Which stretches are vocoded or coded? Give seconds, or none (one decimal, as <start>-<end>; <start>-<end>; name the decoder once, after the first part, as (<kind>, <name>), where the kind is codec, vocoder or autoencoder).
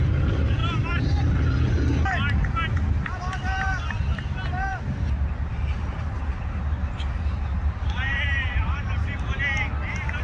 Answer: 8.1-9.4 (vocoder, BigVGAN v2)